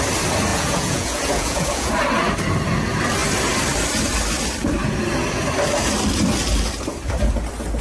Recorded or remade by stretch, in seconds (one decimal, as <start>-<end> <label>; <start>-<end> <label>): 0.0-0.5 recorded; 0.5-1.9 remade; 1.9-7.8 recorded